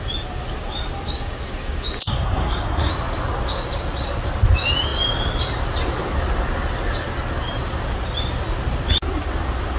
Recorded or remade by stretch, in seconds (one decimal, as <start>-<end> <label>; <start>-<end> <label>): 0.0-2.0 recorded; 2.0-2.9 remade; 2.9-9.8 recorded